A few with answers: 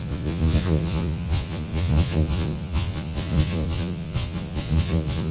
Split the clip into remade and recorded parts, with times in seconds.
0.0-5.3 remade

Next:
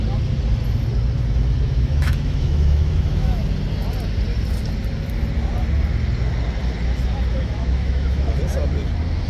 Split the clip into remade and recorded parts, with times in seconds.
0.0-1.6 recorded; 1.6-3.4 remade; 3.4-7.3 recorded; 7.3-8.4 remade; 8.4-9.3 recorded

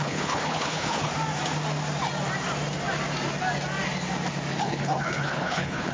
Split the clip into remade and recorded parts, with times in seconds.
0.0-1.1 remade; 1.1-4.6 recorded; 4.6-5.9 remade